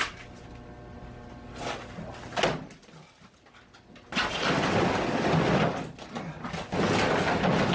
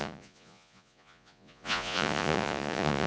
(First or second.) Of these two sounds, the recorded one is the first